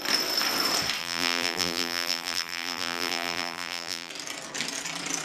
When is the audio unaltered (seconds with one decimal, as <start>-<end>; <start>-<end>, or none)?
0.0-1.0; 4.1-5.2